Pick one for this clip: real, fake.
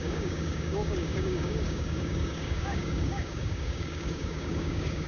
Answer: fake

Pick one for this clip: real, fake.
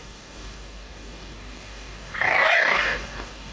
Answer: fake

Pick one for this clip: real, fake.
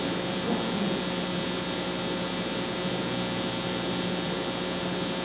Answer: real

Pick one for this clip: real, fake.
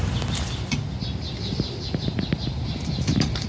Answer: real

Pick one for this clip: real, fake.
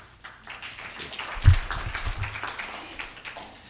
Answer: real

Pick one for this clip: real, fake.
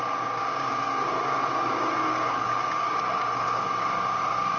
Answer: fake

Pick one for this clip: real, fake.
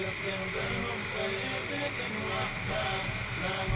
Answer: real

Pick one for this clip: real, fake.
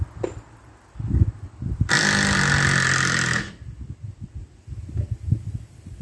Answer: real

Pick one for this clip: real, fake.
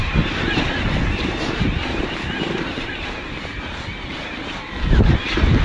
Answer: real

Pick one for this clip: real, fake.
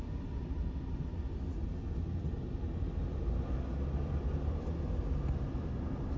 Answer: real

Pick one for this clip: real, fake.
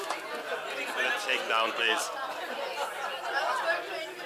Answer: real